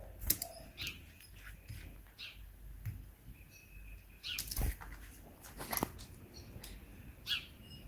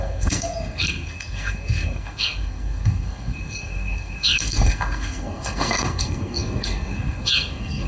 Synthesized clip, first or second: second